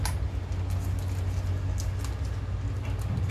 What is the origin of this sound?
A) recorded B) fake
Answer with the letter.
A